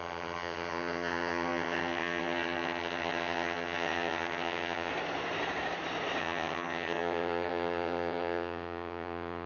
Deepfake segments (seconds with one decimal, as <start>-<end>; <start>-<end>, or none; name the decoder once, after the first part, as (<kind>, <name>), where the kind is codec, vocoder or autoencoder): 0.0-4.9 (vocoder, HiFi-GAN); 6.2-9.5